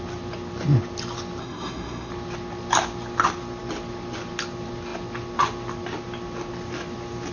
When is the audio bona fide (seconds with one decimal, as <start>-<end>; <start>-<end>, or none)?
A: 0.0-1.4; 2.1-7.3